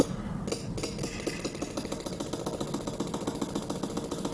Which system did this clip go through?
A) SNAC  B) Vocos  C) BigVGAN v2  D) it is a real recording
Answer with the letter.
D